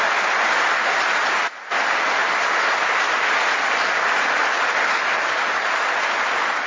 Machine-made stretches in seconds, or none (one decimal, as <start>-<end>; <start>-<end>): none